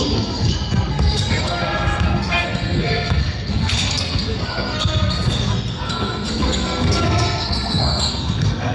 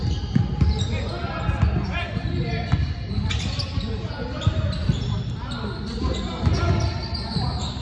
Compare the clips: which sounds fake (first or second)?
first